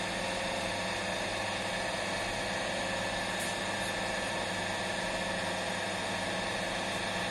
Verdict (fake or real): real